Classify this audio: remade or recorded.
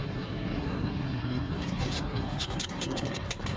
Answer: remade